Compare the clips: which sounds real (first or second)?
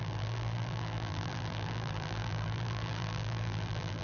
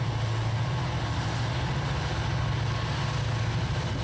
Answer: second